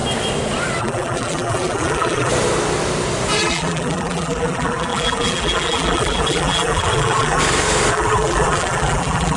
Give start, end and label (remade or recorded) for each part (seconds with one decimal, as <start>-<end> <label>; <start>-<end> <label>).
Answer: 0.0-0.8 recorded; 0.8-2.3 remade; 2.3-3.4 recorded; 3.4-7.4 remade; 7.4-7.9 recorded; 7.9-9.4 remade